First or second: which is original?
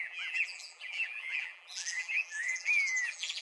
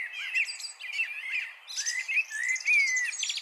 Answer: second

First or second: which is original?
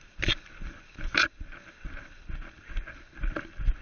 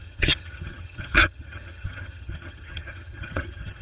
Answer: first